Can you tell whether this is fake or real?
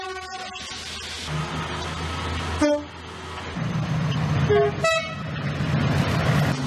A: real